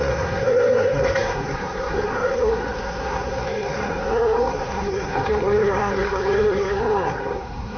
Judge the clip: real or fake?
fake